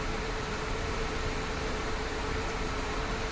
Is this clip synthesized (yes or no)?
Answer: yes